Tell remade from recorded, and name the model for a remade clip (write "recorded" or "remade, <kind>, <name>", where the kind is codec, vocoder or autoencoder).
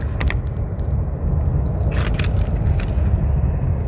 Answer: recorded